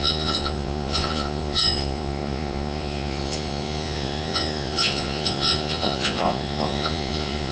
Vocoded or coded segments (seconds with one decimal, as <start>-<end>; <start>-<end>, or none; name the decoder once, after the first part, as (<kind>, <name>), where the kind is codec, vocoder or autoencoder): 0.0-7.5 (vocoder, Vocos)